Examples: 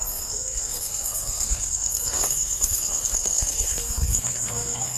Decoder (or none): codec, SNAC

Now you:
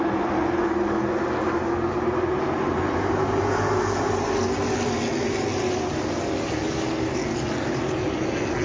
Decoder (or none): none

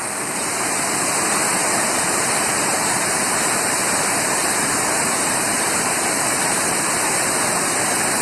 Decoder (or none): vocoder, BigVGAN v2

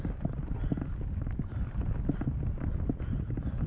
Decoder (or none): none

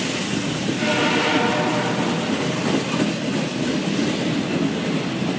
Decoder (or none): none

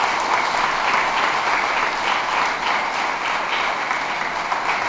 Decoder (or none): none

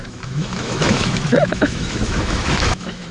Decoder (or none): autoencoder, DAC-VAE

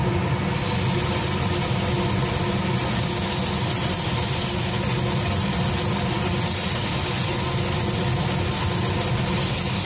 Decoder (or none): none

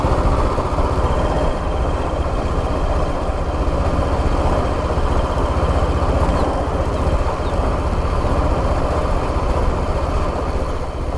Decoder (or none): none